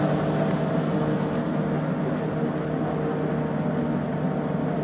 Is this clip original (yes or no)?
yes